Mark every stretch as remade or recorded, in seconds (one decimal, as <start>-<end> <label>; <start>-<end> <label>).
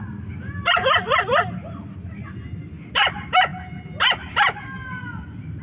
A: 0.0-0.8 recorded; 0.8-1.3 remade; 1.3-5.6 recorded